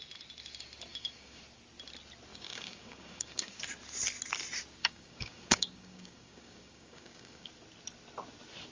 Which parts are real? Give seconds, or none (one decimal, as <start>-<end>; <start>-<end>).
0.0-0.9; 1.4-2.3; 3.6-4.8; 7.5-8.7